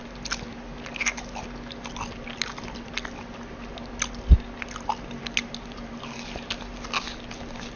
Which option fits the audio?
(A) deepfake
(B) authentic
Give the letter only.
B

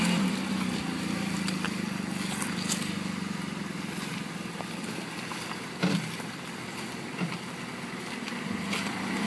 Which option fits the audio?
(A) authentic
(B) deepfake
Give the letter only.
A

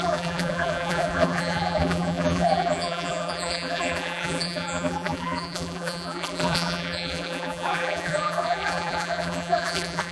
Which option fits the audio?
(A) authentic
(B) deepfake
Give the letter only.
B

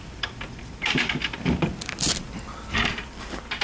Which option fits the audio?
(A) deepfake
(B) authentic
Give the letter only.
B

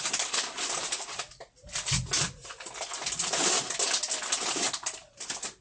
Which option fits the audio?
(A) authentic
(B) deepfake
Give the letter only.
A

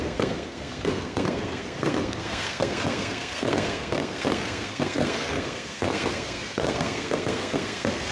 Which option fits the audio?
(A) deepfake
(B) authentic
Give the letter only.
A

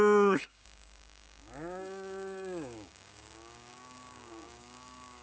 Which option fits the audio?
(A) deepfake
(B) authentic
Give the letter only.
A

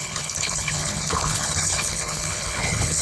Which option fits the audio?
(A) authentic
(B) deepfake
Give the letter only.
B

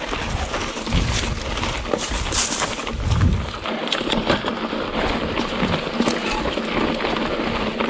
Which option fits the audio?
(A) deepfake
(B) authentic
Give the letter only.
B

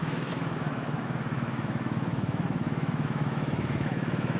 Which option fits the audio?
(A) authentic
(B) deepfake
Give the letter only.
B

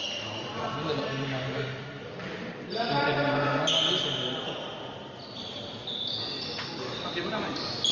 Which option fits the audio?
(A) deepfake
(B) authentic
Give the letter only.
B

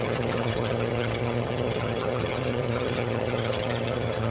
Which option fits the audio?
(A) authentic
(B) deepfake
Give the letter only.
B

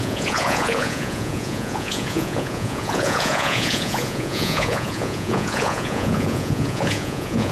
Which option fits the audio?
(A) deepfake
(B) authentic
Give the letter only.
A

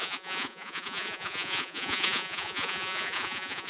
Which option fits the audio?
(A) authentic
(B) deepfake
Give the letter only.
B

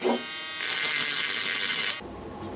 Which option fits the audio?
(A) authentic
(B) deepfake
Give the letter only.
A